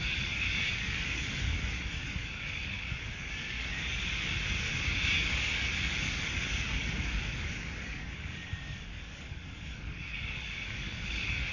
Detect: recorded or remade remade